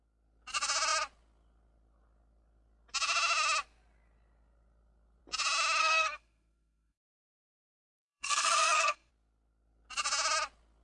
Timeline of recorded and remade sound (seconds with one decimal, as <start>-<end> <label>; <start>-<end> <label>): 0.0-5.8 recorded; 5.8-9.1 remade; 9.1-10.8 recorded